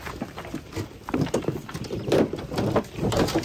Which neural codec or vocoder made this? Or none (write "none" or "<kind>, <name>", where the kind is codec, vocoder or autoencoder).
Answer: vocoder, BigVGAN v2